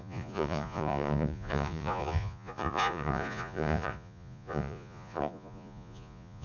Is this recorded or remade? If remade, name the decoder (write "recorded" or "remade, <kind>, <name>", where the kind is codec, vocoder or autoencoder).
remade, vocoder, Vocos